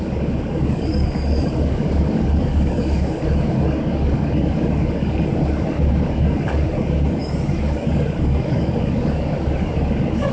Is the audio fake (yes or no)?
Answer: yes